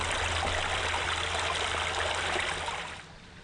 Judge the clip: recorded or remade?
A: recorded